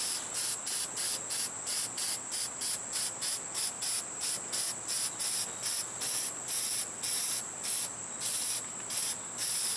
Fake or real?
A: real